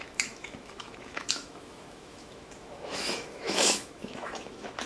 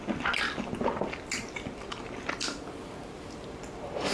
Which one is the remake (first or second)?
first